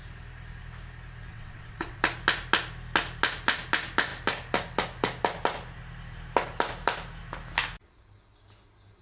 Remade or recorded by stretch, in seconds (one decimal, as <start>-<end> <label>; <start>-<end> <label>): 0.0-1.3 recorded; 1.3-2.0 remade; 2.0-9.0 recorded